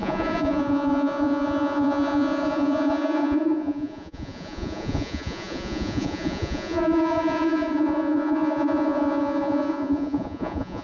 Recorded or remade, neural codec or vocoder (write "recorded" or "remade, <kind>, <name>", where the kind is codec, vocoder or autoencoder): remade, vocoder, Vocos